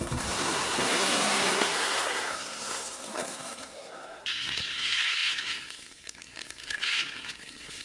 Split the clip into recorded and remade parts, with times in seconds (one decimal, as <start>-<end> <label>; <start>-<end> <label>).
0.0-7.8 remade